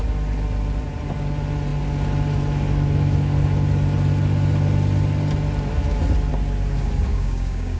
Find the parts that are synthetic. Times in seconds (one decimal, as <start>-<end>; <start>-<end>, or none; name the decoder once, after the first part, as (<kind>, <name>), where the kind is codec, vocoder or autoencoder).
7.1-7.8 (codec, DAC)